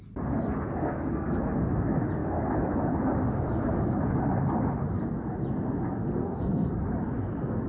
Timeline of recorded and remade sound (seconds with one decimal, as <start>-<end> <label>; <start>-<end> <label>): 0.0-0.8 recorded; 0.8-1.4 remade; 1.4-6.2 recorded; 6.2-6.7 remade; 6.7-7.7 recorded